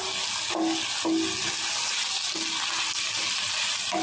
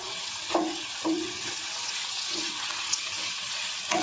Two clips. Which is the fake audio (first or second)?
second